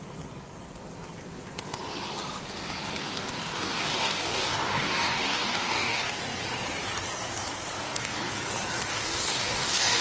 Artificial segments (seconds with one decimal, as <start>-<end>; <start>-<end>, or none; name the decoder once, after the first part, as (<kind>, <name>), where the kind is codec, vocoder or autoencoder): 3.0-6.2 (codec, DAC); 7.8-8.3; 8.9-10.0